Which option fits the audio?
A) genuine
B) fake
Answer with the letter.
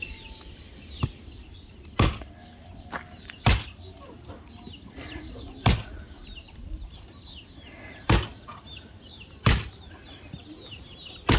A